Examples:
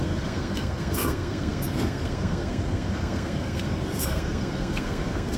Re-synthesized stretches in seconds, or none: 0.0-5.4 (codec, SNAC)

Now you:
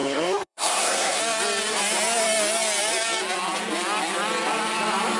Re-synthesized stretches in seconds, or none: 0.0-1.2 (codec, SNAC)

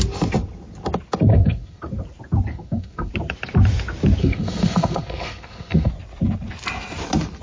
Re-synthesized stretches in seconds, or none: 1.3-1.8 (codec, SNAC); 2.5-3.1; 4.2-5.9

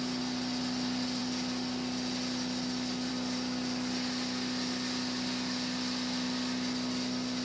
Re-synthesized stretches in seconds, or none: none